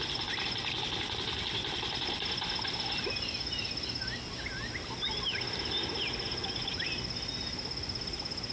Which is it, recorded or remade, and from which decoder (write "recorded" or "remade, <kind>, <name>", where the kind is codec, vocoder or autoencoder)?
recorded